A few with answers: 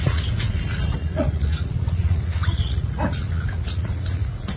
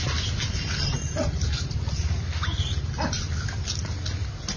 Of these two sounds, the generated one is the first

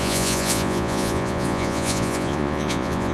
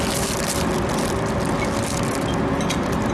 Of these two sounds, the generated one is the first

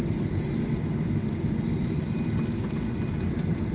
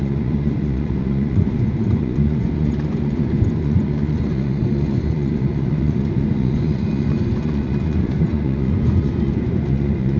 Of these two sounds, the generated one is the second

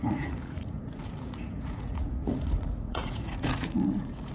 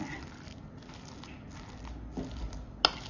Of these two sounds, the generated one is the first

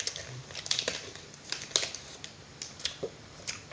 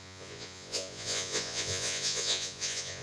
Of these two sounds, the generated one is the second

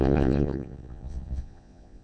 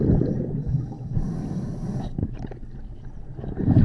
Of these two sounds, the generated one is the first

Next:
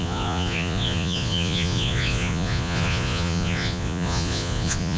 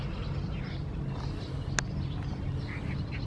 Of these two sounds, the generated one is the first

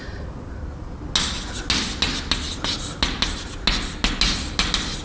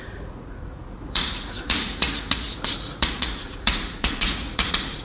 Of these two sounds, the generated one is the second